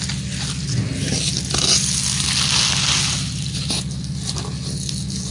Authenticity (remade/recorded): recorded